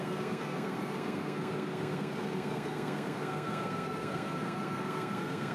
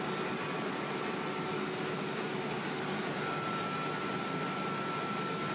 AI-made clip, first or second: first